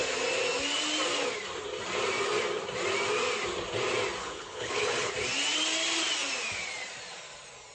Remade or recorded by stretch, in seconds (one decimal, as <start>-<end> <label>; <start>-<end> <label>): 0.0-4.2 recorded; 4.2-5.1 remade; 5.1-7.7 recorded